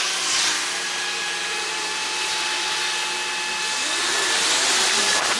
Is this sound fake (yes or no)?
no